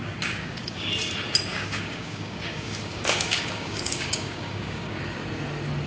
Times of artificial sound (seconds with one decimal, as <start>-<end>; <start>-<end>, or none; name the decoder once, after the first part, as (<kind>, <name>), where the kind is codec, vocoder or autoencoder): 0.0-0.9 (codec, DAC); 1.5-5.0